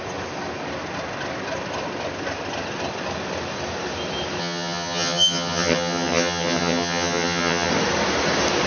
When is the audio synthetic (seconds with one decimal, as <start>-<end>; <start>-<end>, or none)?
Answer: 4.4-7.7